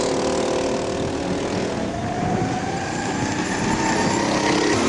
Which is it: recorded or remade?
recorded